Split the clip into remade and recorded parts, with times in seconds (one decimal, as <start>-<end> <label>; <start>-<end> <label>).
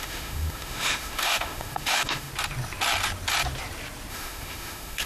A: 0.0-2.3 remade; 2.3-4.1 recorded; 4.1-5.1 remade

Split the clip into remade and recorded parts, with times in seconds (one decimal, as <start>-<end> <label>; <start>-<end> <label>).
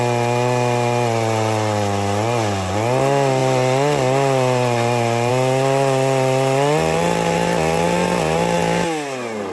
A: 0.0-9.5 recorded